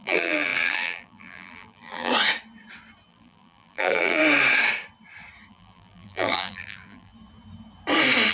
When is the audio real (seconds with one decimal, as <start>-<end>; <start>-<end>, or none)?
2.1-3.1; 4.2-5.5; 7.1-8.3